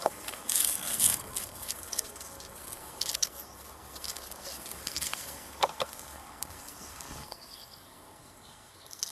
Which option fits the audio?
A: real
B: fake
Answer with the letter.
B